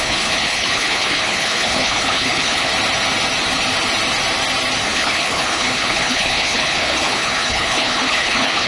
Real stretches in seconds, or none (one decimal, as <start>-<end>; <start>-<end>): 2.7-4.8